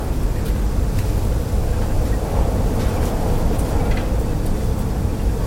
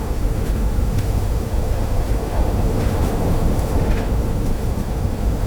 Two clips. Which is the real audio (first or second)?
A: first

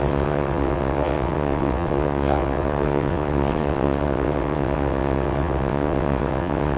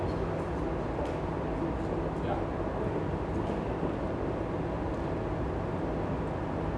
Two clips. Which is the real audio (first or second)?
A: second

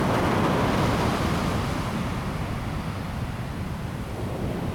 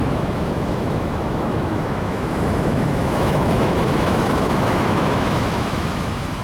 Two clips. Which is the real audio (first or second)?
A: first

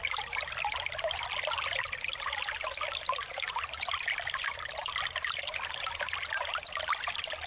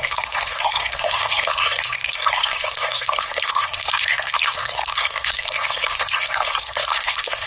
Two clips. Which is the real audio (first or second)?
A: first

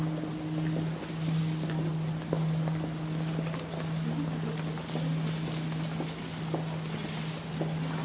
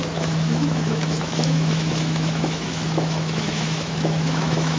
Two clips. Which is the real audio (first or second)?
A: first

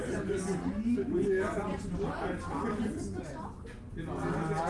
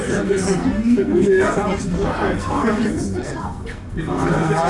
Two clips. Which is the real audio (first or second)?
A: first